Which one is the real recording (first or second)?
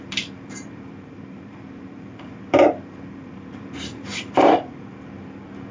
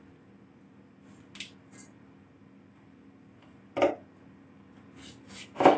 second